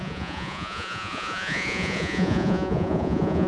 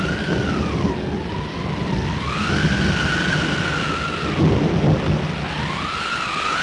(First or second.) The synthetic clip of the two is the first